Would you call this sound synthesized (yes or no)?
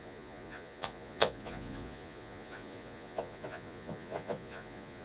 yes